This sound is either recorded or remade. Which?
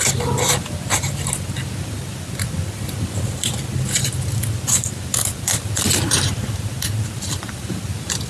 recorded